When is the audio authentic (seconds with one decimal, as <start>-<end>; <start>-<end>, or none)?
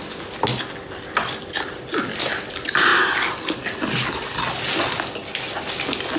0.0-6.2